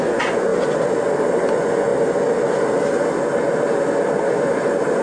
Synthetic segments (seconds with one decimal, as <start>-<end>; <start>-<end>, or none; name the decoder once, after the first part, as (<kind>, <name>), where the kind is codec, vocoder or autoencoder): 0.0-0.5 (vocoder, Vocos); 1.5-1.9